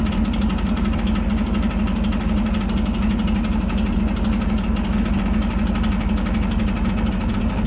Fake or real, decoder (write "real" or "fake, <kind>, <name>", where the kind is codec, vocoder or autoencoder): real